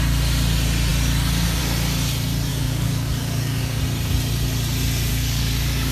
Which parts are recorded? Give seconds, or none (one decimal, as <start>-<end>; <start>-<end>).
0.0-2.5; 3.8-5.1